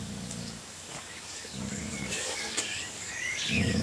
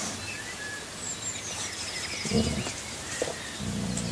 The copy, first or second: first